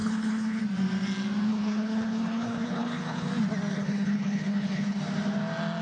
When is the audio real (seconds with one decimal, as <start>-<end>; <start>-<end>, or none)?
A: 0.6-1.5; 3.3-3.7; 5.0-5.8